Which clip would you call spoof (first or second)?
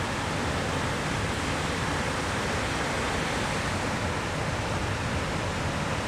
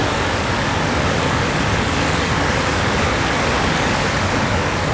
second